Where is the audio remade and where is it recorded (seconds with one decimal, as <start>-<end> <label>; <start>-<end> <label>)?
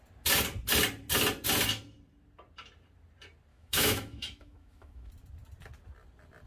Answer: 0.0-3.5 recorded; 3.5-5.1 remade; 5.1-6.5 recorded